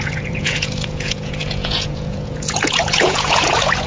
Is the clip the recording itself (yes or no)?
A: no